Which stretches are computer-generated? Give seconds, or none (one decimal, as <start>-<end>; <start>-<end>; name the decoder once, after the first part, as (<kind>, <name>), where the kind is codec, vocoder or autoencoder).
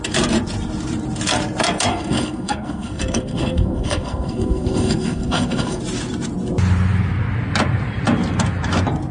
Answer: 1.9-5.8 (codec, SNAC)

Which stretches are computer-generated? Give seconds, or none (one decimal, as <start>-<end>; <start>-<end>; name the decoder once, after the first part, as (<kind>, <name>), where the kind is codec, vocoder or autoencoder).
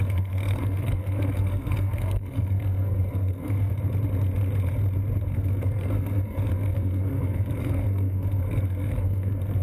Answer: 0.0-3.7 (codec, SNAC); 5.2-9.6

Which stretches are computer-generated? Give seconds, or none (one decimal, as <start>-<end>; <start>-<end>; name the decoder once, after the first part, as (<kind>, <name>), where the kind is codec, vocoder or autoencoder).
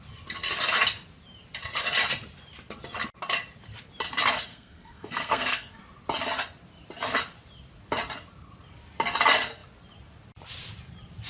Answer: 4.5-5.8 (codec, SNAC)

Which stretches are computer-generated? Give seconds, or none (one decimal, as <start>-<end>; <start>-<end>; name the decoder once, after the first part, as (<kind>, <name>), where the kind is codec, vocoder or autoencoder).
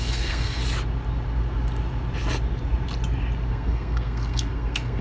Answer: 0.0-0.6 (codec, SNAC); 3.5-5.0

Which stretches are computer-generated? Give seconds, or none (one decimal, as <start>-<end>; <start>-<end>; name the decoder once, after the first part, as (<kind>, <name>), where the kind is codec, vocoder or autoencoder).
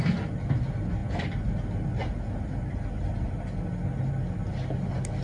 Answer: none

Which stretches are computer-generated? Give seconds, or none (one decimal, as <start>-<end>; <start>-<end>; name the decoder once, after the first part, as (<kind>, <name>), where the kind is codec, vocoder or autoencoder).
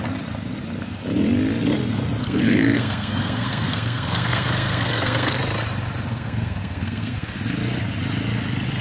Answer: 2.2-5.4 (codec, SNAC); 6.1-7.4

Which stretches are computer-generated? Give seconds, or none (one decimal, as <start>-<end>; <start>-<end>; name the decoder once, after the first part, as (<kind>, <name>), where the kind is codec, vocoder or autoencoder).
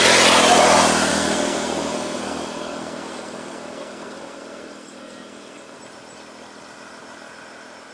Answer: 1.1-5.8 (codec, SNAC)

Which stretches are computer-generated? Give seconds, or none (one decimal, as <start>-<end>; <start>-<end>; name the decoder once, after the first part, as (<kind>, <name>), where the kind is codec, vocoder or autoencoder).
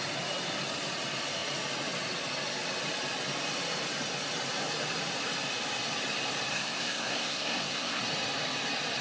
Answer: 6.5-8.0 (codec, SNAC)